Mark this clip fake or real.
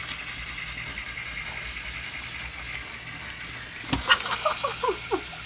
real